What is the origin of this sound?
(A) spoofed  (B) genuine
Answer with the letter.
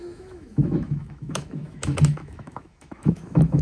A